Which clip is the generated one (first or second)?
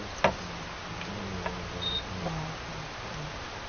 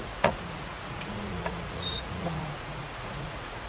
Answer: second